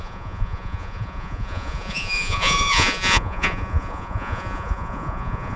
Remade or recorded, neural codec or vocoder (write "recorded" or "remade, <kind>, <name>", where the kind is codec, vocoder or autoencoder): remade, vocoder, Vocos